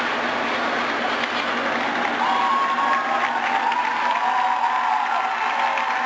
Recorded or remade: recorded